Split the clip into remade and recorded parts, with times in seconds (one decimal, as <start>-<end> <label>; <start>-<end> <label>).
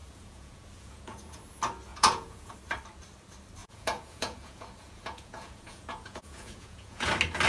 0.0-1.4 remade; 1.4-1.9 recorded; 1.9-2.5 remade; 2.5-3.6 recorded; 3.6-7.1 remade; 7.1-7.5 recorded